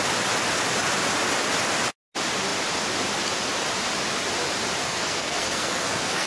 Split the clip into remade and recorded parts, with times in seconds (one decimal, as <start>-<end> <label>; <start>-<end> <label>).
0.0-4.8 recorded; 4.8-6.3 remade